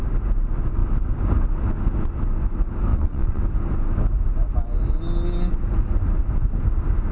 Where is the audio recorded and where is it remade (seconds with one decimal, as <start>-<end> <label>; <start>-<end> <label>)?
0.0-2.9 recorded; 2.9-3.4 remade; 3.4-7.1 recorded